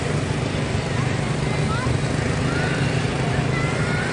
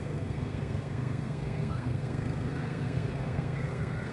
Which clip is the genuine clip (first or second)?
first